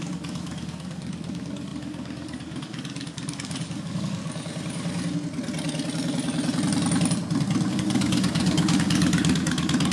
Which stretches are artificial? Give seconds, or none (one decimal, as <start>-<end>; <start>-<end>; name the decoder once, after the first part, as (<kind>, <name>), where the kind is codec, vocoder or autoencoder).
0.0-4.2 (codec, DAC); 7.7-9.9